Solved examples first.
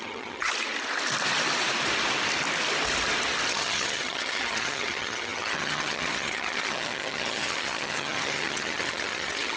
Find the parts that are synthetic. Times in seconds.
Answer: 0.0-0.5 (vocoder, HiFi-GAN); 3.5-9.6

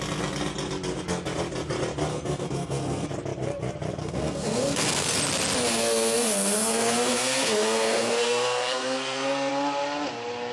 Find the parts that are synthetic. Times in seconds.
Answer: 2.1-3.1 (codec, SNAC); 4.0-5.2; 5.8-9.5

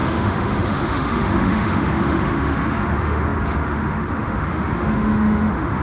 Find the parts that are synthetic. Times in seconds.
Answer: 0.0-5.8 (autoencoder, DAC-VAE)

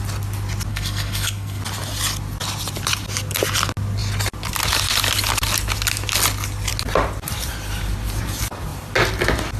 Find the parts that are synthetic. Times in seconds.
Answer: 0.7-1.6 (codec, SNAC)

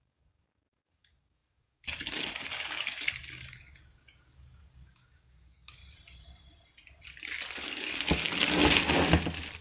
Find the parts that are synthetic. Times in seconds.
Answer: 0.0-5.8 (codec, DAC); 7.6-8.6

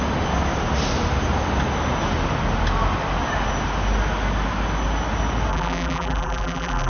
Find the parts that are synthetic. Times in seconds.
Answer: 5.5-6.9 (vocoder, BigVGAN v2)